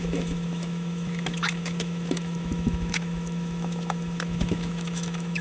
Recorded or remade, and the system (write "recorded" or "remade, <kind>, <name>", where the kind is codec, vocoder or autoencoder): remade, autoencoder, DAC-VAE